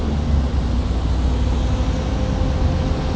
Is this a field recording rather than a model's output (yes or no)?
yes